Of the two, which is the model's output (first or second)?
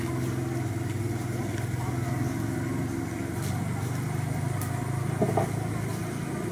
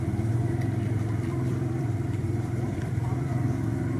second